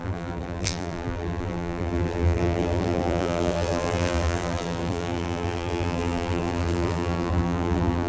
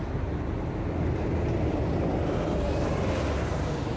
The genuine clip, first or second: second